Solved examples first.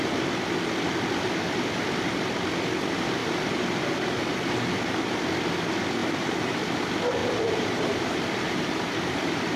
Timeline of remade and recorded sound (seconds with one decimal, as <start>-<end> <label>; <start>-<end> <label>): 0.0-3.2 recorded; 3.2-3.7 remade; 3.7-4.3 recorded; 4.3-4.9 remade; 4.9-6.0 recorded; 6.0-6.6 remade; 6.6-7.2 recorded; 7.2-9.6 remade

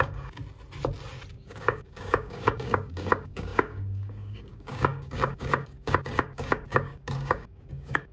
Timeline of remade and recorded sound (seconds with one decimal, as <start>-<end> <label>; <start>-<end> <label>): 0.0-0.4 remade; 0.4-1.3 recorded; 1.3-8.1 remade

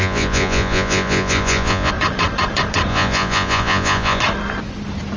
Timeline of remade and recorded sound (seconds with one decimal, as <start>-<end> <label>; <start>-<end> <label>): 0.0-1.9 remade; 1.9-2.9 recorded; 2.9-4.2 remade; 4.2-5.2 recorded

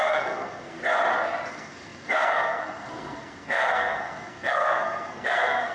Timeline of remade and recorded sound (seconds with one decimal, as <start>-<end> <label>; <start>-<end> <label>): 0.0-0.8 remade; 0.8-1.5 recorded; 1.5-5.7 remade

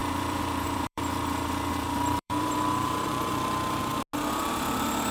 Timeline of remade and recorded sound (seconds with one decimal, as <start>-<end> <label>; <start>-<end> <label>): 0.0-3.1 remade; 3.1-5.1 recorded

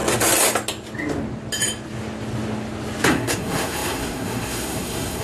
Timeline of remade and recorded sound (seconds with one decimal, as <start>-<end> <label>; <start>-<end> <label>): 0.0-3.1 recorded; 3.1-5.2 remade